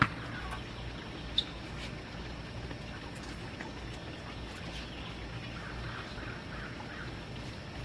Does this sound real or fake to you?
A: real